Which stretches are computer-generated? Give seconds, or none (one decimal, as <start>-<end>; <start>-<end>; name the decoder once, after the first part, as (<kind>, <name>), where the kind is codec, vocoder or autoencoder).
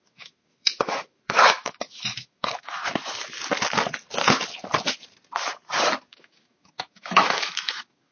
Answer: 0.0-2.8 (autoencoder, DAC-VAE); 6.1-8.1